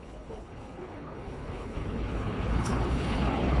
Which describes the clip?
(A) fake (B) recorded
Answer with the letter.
A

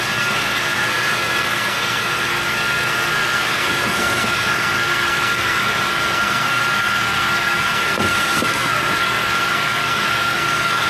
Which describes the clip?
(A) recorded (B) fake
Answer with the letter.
B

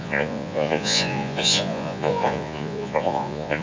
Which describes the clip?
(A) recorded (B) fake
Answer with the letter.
B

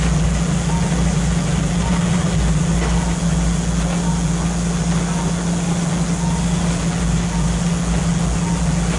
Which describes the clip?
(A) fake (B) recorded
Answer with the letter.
B